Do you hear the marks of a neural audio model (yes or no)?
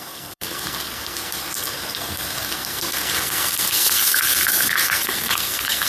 yes